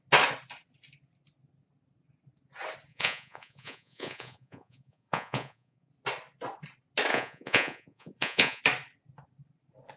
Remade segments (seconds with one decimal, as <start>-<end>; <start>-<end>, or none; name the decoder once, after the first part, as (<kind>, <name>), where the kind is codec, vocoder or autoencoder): 2.9-5.9 (vocoder, Vocos); 7.1-8.6